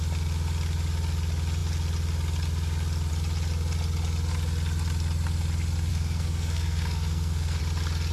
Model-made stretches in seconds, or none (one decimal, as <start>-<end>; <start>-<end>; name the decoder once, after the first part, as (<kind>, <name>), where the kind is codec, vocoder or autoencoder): 5.9-7.6 (codec, SNAC)